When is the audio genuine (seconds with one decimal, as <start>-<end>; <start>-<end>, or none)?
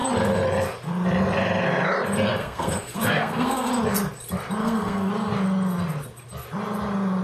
0.0-2.4; 3.7-4.6; 5.1-7.2